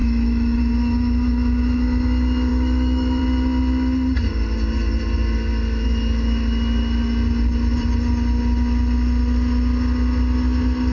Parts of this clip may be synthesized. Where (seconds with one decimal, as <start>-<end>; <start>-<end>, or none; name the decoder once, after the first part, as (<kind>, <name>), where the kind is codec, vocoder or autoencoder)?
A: 0.0-0.6 (autoencoder, DAC-VAE); 2.5-3.2